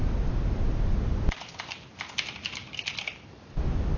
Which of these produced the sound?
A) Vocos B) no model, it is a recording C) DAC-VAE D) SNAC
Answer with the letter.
B